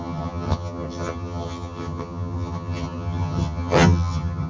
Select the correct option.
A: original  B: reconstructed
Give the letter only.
B